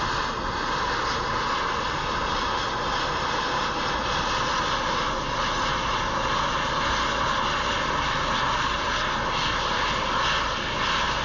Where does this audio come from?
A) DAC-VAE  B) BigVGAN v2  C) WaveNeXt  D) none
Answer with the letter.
D